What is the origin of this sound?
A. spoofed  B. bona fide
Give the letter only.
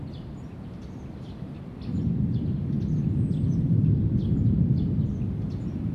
B